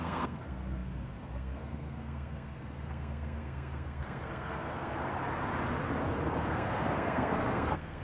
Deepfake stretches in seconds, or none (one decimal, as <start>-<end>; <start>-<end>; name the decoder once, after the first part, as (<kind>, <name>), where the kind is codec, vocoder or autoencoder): 0.0-5.1 (codec, SNAC); 6.5-8.0